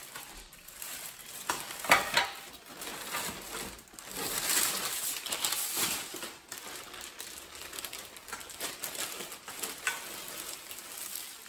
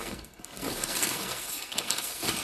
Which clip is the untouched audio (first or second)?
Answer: first